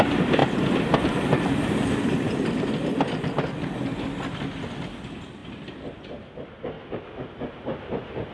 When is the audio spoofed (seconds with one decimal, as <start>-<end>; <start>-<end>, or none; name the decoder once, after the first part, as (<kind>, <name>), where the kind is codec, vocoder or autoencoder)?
0.4-2.3 (vocoder, BigVGAN v2)